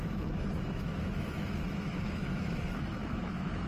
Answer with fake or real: fake